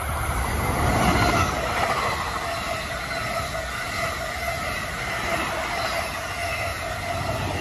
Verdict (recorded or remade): recorded